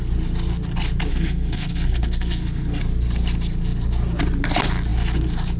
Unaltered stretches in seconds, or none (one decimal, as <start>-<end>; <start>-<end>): 0.0-1.1; 2.8-5.6